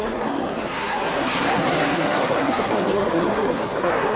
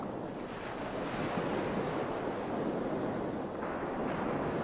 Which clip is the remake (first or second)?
first